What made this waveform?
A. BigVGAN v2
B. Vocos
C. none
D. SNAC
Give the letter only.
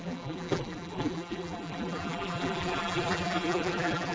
A